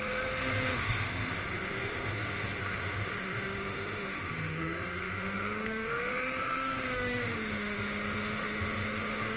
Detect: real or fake fake